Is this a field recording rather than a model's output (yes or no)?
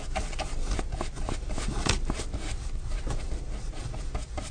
yes